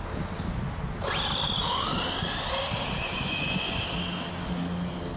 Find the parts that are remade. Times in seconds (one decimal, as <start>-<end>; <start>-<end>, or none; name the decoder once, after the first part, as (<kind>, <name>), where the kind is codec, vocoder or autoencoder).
3.0-3.8 (vocoder, Vocos)